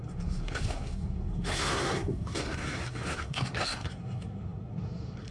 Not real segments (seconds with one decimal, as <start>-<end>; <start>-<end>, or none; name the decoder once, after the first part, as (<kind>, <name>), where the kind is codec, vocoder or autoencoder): 0.0-5.3 (codec, SNAC)